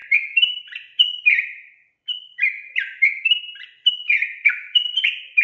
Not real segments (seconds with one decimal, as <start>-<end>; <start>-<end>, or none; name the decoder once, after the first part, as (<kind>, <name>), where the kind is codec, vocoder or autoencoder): 0.0-3.2 (vocoder, BigVGAN v2); 4.0-5.0